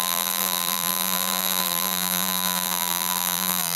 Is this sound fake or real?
fake